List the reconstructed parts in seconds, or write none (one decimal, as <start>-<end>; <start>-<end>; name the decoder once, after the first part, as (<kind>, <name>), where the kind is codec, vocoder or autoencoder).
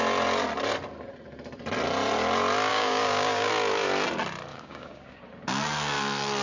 2.7-3.5 (codec, DAC); 4.5-5.2